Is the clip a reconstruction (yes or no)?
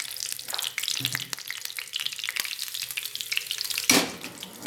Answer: no